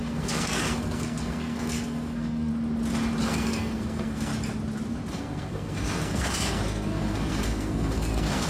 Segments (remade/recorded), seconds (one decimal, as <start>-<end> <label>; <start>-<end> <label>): 0.0-2.5 remade; 2.5-3.2 recorded; 3.2-4.3 remade; 4.3-5.1 recorded; 5.1-8.5 remade